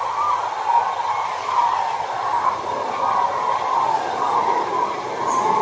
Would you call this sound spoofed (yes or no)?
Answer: no